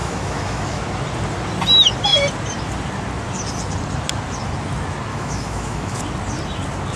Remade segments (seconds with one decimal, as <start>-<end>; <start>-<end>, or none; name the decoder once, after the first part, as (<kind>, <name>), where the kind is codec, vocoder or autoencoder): 0.0-0.8 (autoencoder, DAC-VAE); 5.1-6.0